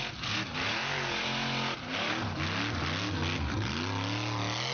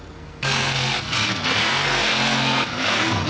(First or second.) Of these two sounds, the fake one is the second